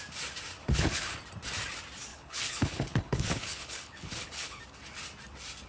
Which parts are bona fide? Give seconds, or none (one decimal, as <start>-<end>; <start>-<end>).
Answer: 0.0-0.6; 1.2-2.1; 4.6-5.7